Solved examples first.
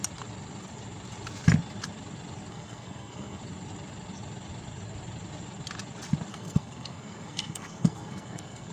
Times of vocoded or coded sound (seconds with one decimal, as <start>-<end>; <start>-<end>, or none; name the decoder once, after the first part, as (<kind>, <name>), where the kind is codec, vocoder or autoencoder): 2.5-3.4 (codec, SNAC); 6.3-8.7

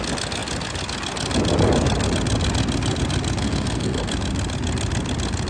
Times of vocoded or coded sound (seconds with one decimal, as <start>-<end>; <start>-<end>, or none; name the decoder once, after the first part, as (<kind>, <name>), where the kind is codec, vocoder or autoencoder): 3.4-4.1 (codec, SNAC)

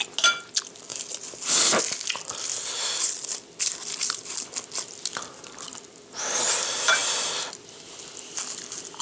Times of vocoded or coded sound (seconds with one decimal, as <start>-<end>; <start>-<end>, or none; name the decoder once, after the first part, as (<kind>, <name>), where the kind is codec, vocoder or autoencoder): none

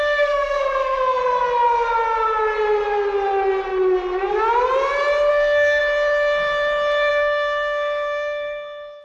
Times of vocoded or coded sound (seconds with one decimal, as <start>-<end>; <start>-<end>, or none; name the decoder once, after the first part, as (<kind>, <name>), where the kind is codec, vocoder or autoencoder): 0.0-1.2 (codec, SNAC); 5.3-5.8; 7.1-9.0

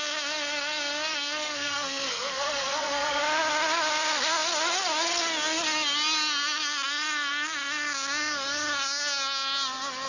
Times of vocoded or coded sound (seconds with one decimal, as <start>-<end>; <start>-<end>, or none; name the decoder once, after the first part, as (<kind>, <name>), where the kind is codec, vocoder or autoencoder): 1.1-3.2 (codec, SNAC)

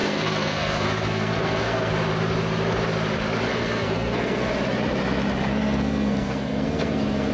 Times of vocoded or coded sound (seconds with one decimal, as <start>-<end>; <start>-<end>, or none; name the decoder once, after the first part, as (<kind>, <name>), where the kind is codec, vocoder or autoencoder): 0.0-1.9 (codec, SNAC); 3.5-4.5; 5.5-7.3

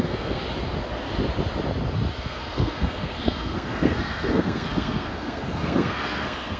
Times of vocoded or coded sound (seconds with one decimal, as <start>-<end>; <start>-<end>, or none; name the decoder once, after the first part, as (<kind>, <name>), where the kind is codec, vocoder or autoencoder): 0.0-0.4 (codec, SNAC); 2.2-6.6